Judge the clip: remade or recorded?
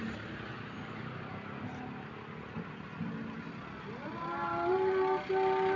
recorded